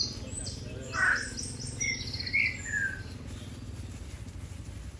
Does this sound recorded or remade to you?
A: recorded